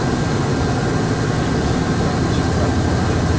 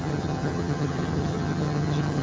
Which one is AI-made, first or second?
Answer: second